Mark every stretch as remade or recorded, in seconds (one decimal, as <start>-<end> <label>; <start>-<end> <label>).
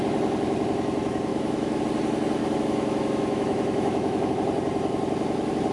0.0-1.3 recorded; 1.3-1.8 remade; 1.8-2.4 recorded; 2.4-4.3 remade; 4.3-5.7 recorded